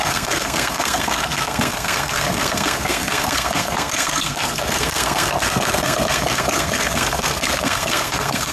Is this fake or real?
fake